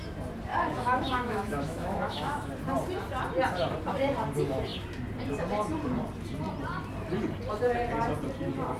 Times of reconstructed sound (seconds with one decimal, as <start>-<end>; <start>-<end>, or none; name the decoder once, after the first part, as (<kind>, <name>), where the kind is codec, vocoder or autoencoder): 0.5-2.5 (autoencoder, DAC-VAE)